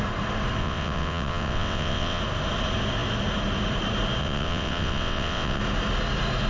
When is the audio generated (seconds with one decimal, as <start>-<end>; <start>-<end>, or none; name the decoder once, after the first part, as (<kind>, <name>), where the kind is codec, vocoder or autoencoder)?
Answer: 0.6-2.2 (vocoder, WaveNeXt); 4.2-5.6